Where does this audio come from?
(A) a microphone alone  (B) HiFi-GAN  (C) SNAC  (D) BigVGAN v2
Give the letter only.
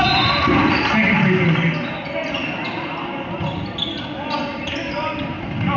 A